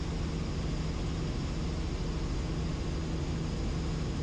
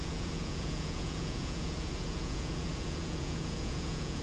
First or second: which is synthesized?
second